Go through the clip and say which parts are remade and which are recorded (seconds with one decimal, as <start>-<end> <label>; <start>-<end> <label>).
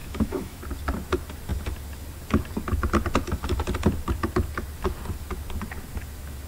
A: 0.0-0.6 remade; 0.6-6.5 recorded